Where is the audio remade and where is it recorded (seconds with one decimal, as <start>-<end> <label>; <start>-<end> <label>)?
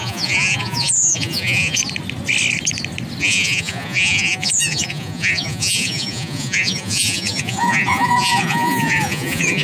0.0-1.8 remade; 1.8-3.2 recorded; 3.2-9.6 remade